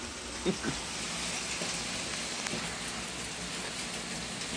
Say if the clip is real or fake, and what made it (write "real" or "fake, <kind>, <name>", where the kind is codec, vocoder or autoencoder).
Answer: real